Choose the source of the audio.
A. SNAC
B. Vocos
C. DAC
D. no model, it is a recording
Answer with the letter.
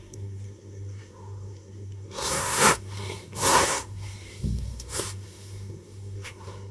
A